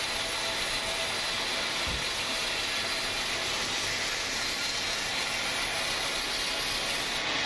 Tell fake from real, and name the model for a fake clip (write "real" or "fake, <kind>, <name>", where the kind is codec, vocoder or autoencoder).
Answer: real